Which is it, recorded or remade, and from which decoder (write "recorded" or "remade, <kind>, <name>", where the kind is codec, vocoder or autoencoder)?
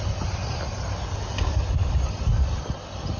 recorded